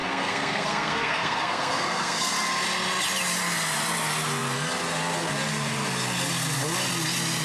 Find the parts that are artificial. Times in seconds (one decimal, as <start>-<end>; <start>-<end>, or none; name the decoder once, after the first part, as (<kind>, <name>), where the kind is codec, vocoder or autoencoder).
0.0-2.3 (codec, SNAC)